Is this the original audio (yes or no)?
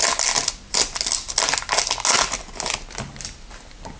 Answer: yes